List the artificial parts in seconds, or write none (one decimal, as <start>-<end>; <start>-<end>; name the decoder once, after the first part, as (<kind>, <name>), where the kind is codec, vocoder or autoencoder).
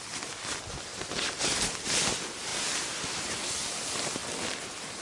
none